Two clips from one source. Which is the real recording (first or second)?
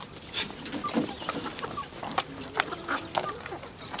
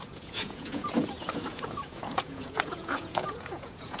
first